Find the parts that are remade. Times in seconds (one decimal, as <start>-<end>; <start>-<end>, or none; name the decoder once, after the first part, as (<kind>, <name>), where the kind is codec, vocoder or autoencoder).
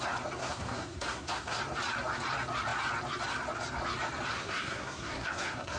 0.4-1.6 (codec, SNAC); 4.3-5.8